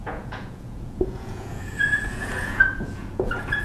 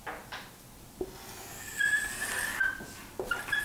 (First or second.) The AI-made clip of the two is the first